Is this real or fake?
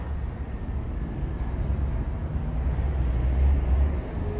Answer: real